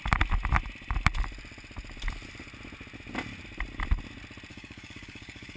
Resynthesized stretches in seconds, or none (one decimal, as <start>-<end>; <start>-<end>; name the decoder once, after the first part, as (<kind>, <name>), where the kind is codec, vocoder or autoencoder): 4.5-5.6 (codec, DAC)